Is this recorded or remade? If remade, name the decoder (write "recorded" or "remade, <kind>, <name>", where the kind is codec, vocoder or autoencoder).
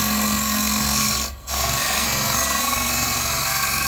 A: remade, codec, SNAC